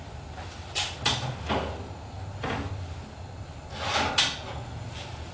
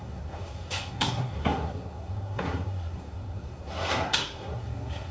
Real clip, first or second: first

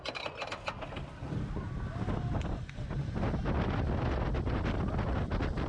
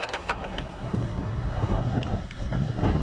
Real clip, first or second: first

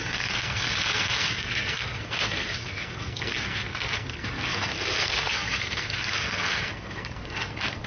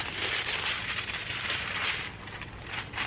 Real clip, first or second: second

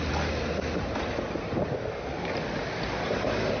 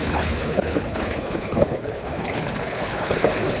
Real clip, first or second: first